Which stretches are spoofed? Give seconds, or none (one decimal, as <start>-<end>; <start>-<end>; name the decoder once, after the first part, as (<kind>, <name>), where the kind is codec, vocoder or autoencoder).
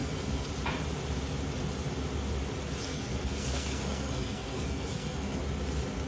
0.0-0.5 (codec, SNAC); 2.9-5.4